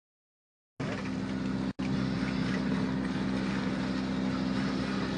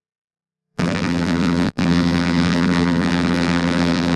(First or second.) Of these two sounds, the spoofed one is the second